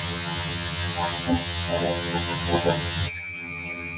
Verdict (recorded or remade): remade